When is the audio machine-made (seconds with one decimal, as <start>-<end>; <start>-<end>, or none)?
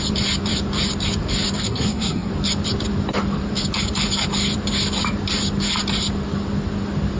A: 1.6-2.3